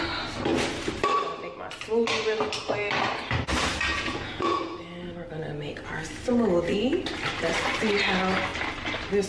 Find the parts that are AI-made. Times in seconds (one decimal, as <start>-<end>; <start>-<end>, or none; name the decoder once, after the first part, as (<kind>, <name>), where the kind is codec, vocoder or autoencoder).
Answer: 3.9-4.8 (vocoder, Vocos)